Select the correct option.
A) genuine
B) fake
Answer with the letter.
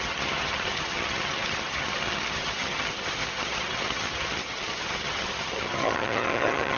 B